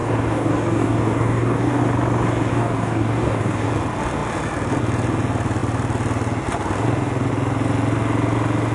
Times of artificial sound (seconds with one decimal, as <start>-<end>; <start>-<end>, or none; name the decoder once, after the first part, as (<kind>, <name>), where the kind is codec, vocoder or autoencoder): 0.0-1.8 (codec, DAC); 2.5-3.7